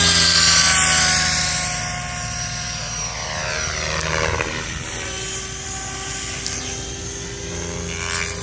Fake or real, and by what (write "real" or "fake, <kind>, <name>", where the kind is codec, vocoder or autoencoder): fake, vocoder, BigVGAN v2